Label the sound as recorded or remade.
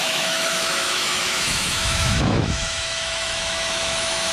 remade